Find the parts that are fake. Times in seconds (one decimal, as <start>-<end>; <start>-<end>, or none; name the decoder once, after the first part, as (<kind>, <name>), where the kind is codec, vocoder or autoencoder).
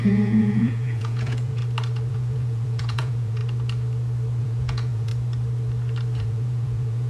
0.0-1.6 (vocoder, Vocos); 2.1-3.4; 4.4-5.1; 6.2-7.1